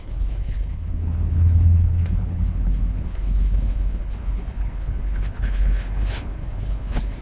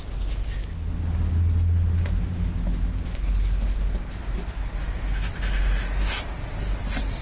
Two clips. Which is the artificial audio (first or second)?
first